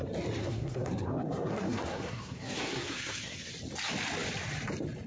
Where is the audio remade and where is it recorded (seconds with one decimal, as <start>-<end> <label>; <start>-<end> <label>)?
0.0-0.4 recorded; 0.4-3.5 remade; 3.5-5.1 recorded